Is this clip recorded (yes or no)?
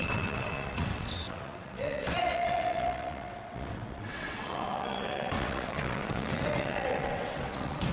no